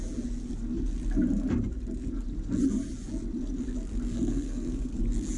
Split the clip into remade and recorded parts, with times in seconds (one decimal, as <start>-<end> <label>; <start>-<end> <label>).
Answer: 0.0-4.1 recorded; 4.1-5.0 remade; 5.0-5.4 recorded